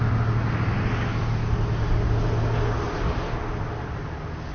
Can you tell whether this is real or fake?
real